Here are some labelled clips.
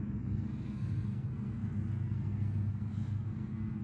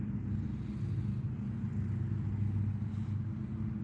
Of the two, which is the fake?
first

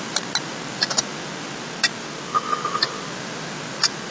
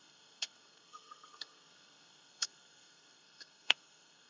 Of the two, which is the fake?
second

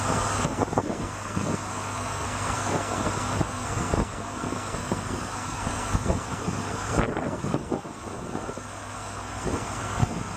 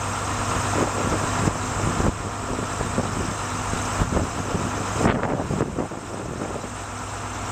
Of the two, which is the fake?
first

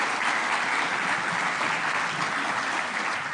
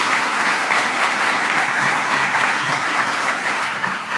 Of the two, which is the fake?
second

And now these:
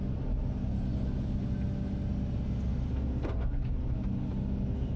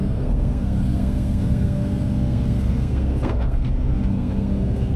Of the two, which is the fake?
second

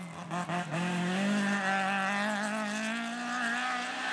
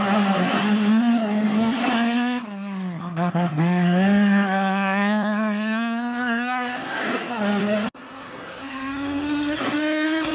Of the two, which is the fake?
second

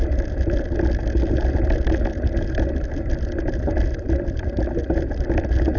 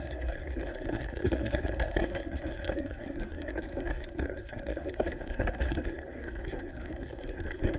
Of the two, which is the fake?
second